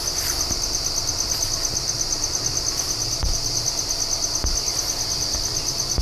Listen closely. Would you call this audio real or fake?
real